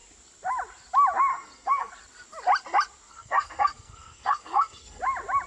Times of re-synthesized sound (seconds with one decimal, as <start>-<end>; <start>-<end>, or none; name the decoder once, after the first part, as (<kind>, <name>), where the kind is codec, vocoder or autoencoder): 1.3-1.9 (codec, SNAC); 3.1-5.0